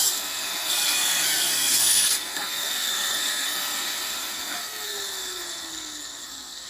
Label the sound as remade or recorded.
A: remade